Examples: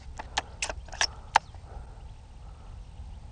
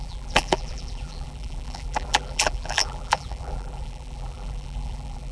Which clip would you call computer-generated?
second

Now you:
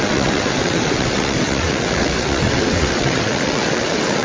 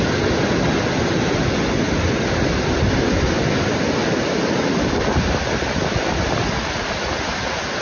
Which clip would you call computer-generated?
first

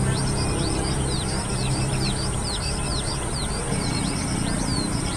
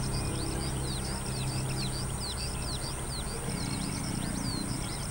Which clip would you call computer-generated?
first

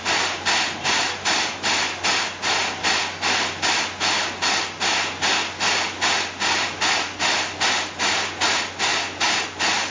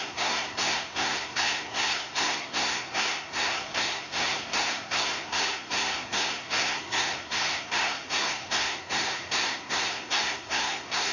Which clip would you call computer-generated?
second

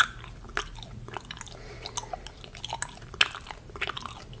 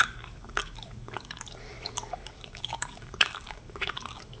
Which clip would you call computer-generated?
second